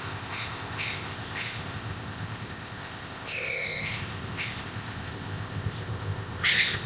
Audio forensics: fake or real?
fake